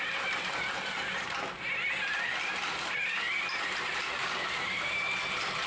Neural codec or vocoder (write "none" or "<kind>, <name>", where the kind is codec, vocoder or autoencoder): none